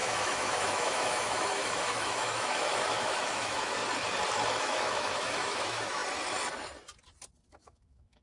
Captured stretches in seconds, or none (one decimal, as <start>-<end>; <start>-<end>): 3.8-4.6; 6.0-7.5